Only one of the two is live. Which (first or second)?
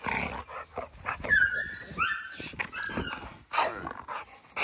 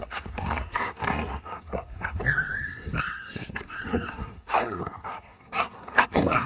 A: first